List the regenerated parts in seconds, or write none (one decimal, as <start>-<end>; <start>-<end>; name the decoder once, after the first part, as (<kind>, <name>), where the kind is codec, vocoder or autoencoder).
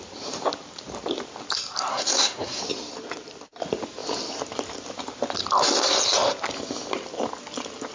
1.9-2.6 (codec, SNAC)